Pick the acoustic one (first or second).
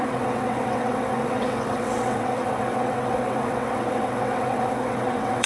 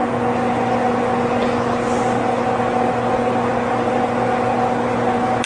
second